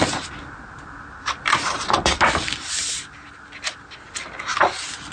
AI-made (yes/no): no